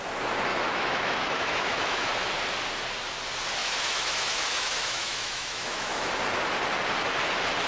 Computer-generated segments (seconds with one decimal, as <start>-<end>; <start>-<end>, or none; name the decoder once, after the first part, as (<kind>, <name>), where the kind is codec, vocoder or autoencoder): 0.5-2.1 (autoencoder, DAC-VAE); 3.6-6.1